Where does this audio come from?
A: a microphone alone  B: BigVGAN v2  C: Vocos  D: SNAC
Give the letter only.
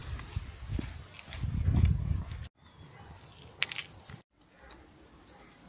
A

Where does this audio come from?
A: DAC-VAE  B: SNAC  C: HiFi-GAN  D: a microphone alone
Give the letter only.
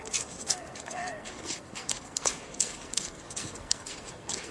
B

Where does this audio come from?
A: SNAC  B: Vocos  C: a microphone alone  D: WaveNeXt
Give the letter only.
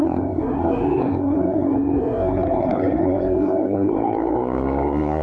A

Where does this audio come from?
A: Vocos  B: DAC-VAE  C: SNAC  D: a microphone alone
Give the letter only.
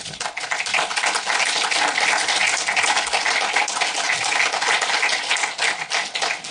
D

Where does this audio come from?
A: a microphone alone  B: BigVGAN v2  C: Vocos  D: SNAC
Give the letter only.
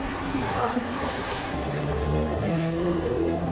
D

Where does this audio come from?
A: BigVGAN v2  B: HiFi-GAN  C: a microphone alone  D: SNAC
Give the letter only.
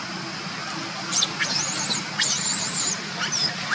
C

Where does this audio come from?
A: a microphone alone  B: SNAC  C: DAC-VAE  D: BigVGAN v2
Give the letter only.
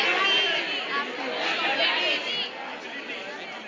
A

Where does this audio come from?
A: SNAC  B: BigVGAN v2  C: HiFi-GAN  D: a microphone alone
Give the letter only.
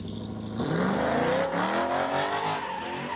D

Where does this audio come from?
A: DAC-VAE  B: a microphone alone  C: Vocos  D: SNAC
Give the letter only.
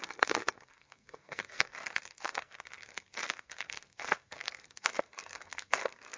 D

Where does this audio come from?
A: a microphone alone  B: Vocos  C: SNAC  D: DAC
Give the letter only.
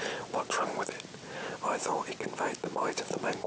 A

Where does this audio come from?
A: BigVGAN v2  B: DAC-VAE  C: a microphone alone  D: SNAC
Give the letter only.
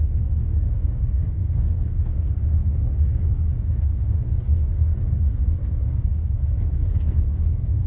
D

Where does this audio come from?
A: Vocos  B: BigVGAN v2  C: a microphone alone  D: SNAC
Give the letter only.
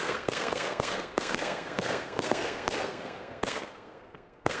D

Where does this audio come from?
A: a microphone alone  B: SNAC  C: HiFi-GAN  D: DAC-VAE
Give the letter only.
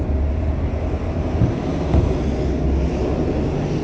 A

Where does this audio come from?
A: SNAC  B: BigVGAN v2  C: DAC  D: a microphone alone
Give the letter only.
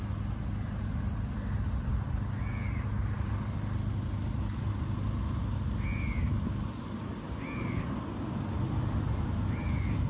D